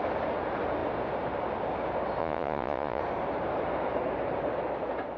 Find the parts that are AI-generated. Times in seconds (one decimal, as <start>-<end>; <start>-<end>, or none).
2.2-3.0